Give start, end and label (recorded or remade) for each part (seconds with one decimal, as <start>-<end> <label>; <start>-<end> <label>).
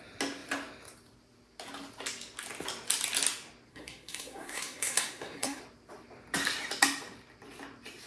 0.0-3.7 recorded; 3.7-5.6 remade; 5.6-8.1 recorded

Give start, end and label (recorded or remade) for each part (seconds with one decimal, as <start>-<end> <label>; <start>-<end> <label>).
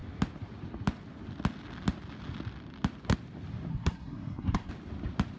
0.0-3.7 recorded; 3.7-4.7 remade; 4.7-5.4 recorded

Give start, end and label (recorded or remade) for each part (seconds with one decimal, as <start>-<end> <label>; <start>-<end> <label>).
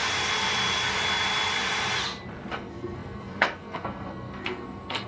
0.0-2.5 recorded; 2.5-5.1 remade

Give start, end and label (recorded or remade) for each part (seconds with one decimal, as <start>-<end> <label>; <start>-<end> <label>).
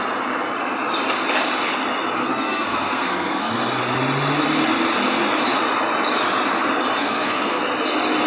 0.0-2.2 recorded; 2.2-3.5 remade; 3.5-7.0 recorded; 7.0-7.6 remade; 7.6-8.3 recorded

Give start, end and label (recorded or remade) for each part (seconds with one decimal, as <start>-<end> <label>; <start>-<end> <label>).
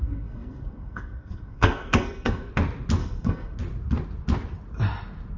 0.0-2.5 remade; 2.5-3.0 recorded; 3.0-3.6 remade; 3.6-5.4 recorded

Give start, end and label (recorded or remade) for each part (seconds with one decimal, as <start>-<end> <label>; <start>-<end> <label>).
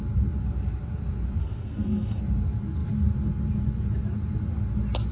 0.0-1.4 recorded; 1.4-2.2 remade; 2.2-5.1 recorded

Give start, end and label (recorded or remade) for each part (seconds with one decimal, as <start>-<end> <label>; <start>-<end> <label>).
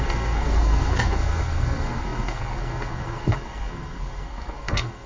0.0-5.1 remade